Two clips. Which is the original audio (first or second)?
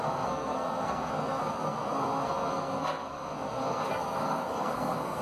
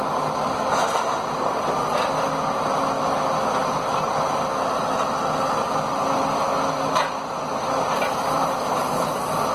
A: second